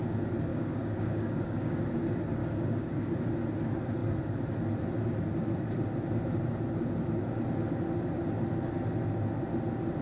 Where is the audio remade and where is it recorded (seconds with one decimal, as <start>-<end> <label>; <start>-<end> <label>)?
0.0-0.5 recorded; 0.5-1.8 remade; 1.8-2.4 recorded; 2.4-3.3 remade; 3.3-10.0 recorded